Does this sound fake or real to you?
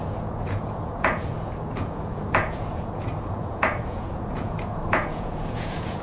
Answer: fake